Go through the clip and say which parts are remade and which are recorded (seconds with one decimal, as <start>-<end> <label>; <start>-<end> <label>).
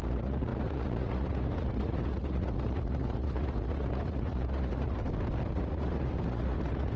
0.0-5.0 remade; 5.0-5.5 recorded; 5.5-7.0 remade